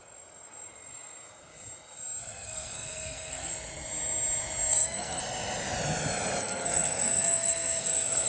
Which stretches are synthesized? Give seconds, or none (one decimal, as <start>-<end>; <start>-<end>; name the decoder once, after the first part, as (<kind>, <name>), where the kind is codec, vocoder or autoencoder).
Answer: 2.2-3.5 (codec, SNAC); 4.7-5.2; 6.4-8.3